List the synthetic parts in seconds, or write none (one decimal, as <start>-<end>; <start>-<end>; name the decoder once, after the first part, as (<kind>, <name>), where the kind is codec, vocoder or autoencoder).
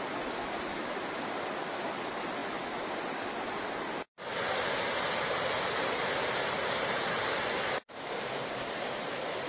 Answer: none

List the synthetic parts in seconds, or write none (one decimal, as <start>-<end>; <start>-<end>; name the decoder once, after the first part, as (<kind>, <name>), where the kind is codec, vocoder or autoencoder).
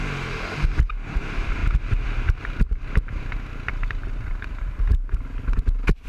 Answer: none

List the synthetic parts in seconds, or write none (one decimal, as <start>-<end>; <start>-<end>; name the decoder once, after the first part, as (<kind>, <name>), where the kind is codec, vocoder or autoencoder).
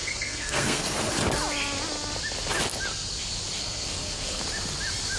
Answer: 0.0-1.1 (codec, SNAC); 3.6-4.4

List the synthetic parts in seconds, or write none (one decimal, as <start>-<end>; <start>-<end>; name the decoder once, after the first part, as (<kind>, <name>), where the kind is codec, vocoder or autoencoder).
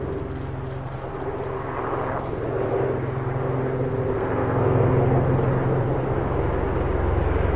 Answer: 4.1-4.9 (codec, SNAC)